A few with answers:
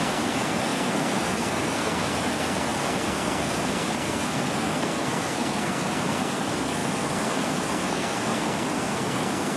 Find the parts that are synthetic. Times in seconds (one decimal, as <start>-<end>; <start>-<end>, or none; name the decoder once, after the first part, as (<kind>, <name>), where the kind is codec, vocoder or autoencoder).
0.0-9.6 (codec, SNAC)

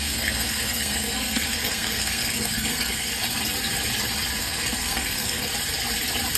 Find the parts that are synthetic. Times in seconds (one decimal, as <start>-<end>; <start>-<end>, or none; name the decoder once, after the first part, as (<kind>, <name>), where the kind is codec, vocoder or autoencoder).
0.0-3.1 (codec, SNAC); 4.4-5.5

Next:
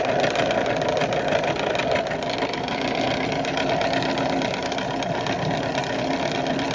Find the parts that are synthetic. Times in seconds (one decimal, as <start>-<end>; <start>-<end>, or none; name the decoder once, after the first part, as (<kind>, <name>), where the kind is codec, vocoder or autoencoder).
none